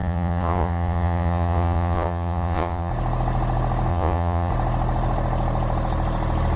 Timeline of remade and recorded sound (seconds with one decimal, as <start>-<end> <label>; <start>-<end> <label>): 0.0-2.9 remade; 2.9-3.9 recorded; 3.9-4.5 remade; 4.5-6.6 recorded